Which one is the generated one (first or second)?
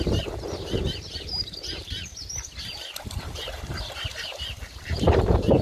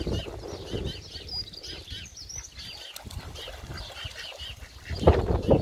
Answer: first